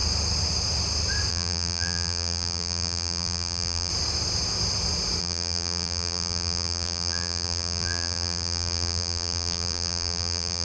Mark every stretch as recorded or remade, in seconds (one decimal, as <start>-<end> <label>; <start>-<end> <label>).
0.0-1.3 recorded; 1.3-3.9 remade; 3.9-5.2 recorded; 5.2-10.6 remade